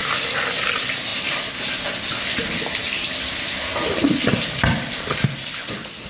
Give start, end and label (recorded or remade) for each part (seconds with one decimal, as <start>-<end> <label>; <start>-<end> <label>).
0.0-6.1 recorded